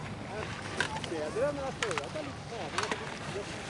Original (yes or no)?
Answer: yes